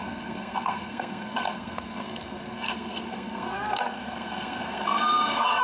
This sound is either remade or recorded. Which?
remade